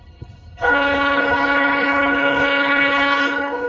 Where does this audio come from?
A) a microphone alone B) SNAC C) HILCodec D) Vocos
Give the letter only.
C